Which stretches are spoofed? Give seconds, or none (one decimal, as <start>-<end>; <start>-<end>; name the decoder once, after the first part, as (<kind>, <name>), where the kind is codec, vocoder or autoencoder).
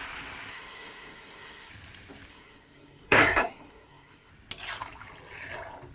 0.5-1.7 (codec, SNAC); 2.3-4.3